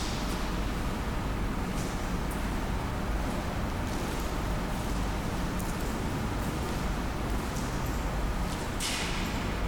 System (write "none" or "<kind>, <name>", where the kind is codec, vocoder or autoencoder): none